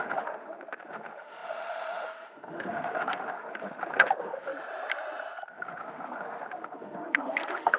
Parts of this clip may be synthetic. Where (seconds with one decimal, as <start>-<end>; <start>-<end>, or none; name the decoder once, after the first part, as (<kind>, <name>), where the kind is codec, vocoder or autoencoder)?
0.0-4.5 (autoencoder, DAC-VAE); 5.5-7.8

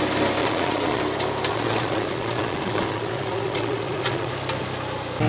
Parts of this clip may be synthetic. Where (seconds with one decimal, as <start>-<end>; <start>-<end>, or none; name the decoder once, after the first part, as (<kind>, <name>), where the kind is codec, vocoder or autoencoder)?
0.4-1.0 (vocoder, Vocos); 1.5-4.3

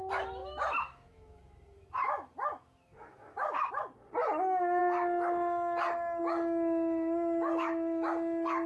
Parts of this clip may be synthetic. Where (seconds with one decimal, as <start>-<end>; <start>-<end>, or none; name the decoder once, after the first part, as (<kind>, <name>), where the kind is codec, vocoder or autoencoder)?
0.4-3.7 (autoencoder, DAC-VAE)

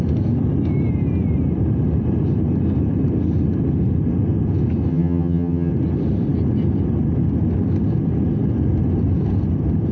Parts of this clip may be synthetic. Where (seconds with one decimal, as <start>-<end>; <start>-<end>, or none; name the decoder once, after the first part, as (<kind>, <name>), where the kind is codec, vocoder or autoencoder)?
4.9-5.7 (vocoder, HiFi-GAN)

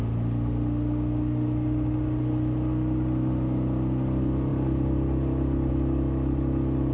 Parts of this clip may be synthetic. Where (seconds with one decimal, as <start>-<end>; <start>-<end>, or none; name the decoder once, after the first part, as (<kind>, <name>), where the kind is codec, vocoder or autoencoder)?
none

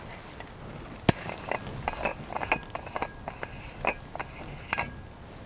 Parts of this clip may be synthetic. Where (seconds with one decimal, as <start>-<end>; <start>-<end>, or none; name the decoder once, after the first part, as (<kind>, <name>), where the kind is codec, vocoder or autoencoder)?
none

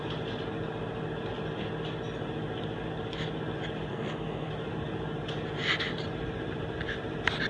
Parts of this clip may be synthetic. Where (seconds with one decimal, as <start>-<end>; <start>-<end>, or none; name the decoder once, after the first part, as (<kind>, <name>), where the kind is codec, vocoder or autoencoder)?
3.9-4.5 (codec, SNAC)